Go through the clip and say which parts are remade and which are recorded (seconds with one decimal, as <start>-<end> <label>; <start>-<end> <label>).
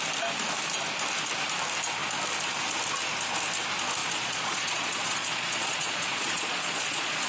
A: 0.0-4.0 recorded; 4.0-7.3 remade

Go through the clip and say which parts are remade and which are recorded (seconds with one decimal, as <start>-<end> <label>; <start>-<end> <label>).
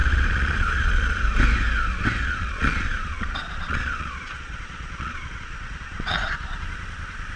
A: 0.0-1.2 remade; 1.2-2.2 recorded; 2.2-6.6 remade; 6.6-7.4 recorded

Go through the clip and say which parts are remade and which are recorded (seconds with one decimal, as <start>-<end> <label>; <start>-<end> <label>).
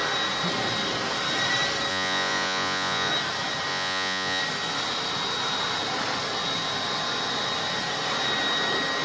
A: 0.0-1.9 recorded; 1.9-3.1 remade; 3.1-3.7 recorded; 3.7-4.4 remade; 4.4-9.0 recorded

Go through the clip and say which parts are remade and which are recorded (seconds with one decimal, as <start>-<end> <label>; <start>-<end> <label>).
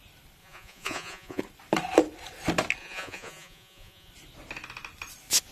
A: 0.0-0.4 recorded; 0.4-1.4 remade; 1.4-2.8 recorded; 2.8-4.1 remade; 4.1-5.5 recorded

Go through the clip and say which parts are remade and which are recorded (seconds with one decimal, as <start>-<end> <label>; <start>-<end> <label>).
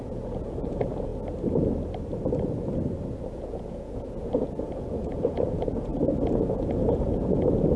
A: 0.0-1.1 remade; 1.1-3.3 recorded; 3.3-5.9 remade; 5.9-6.5 recorded; 6.5-7.8 remade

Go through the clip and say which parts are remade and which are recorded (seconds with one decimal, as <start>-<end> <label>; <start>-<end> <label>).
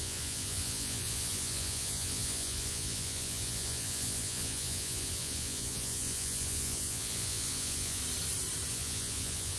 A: 0.0-8.0 remade; 8.0-8.7 recorded; 8.7-9.6 remade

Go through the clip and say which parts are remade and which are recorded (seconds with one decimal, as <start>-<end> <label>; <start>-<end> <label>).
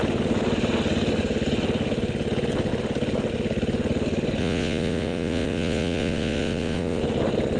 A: 0.0-4.4 recorded; 4.4-7.0 remade; 7.0-7.6 recorded